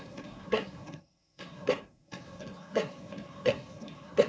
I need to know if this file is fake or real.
fake